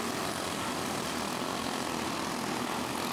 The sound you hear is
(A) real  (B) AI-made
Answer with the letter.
A